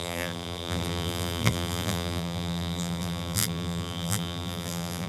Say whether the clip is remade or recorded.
remade